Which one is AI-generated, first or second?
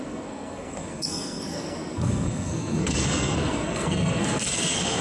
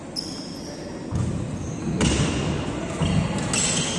first